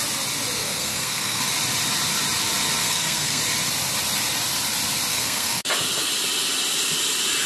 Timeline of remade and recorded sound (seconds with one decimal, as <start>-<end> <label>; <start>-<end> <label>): 0.0-0.6 recorded; 0.6-1.5 remade; 1.5-2.8 recorded; 2.8-3.4 remade; 3.4-5.1 recorded; 5.1-5.7 remade; 5.7-7.5 recorded